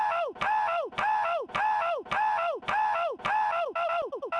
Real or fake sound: real